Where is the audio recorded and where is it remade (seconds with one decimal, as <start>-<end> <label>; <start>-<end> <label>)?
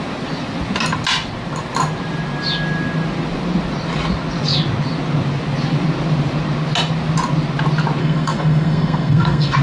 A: 0.0-8.0 recorded; 8.0-9.6 remade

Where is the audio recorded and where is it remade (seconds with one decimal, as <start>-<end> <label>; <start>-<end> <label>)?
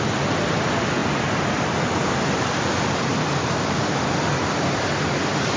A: 0.0-5.6 recorded